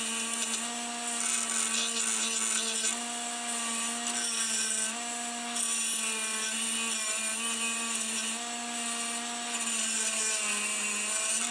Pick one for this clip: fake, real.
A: real